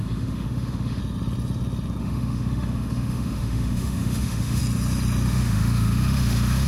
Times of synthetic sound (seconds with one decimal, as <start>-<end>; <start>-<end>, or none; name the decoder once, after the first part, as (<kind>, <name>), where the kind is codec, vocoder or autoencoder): 0.0-1.0 (autoencoder, DAC-VAE); 2.0-4.6; 5.3-6.7